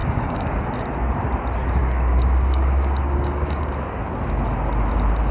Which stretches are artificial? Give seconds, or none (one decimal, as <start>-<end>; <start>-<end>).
0.0-0.6; 1.8-4.0